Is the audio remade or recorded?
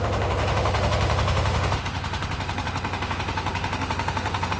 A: remade